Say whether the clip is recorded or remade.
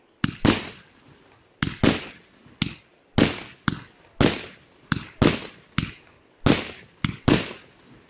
recorded